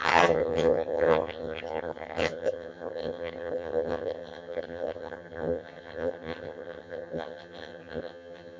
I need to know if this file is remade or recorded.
remade